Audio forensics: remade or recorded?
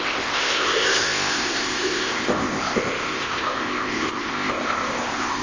remade